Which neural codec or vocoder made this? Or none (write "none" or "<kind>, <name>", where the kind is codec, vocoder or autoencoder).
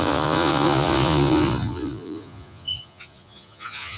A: vocoder, Vocos